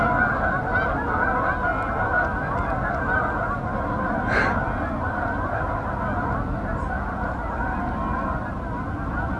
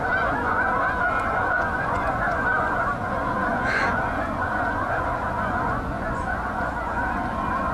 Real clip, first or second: first